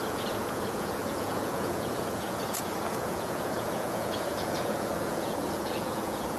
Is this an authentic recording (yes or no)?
no